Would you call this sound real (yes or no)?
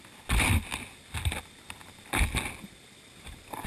yes